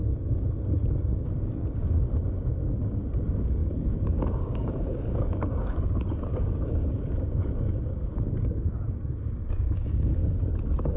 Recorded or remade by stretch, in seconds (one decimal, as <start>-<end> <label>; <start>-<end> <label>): 0.0-10.2 remade; 10.2-11.0 recorded